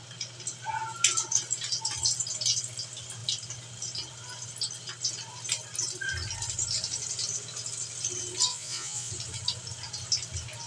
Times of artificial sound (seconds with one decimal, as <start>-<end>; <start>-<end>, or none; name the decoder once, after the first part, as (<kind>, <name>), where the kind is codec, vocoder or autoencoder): 8.5-9.1 (vocoder, Vocos)